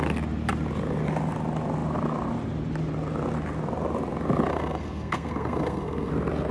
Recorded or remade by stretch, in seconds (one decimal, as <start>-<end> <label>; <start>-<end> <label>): 0.0-4.5 recorded; 4.5-6.1 remade; 6.1-6.5 recorded